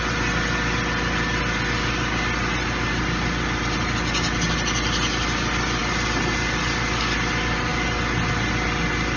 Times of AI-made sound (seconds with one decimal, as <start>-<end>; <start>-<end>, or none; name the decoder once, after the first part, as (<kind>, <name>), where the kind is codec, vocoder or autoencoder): none